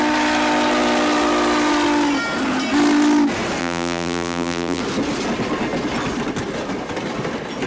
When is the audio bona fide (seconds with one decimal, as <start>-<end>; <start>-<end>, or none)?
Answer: 0.0-3.6; 4.8-7.7